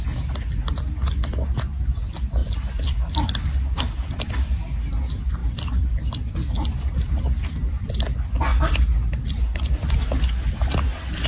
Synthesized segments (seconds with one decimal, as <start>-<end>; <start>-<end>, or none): 2.4-3.1; 5.4-8.0; 8.5-10.3

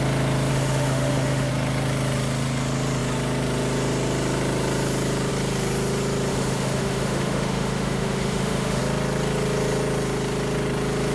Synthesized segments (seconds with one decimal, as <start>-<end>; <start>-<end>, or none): 0.5-1.5; 6.3-8.8

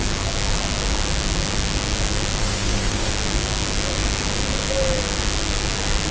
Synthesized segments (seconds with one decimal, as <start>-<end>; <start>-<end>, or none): 2.4-3.1